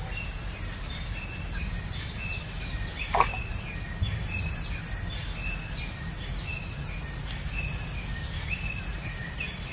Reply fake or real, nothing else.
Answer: real